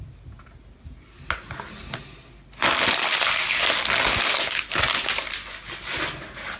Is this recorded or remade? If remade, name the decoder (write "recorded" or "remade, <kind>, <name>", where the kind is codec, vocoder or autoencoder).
recorded